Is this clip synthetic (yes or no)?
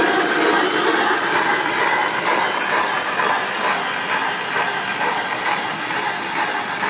no